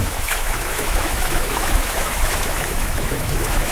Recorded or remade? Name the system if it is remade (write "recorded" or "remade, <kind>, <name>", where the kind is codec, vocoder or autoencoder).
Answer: remade, autoencoder, DAC-VAE